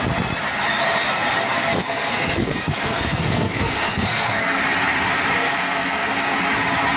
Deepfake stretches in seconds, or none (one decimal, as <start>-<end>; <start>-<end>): 1.8-4.6; 5.4-6.4